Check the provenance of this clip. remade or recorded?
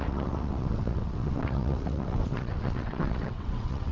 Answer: remade